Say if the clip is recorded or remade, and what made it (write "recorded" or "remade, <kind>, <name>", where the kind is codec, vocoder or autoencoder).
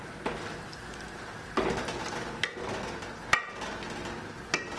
recorded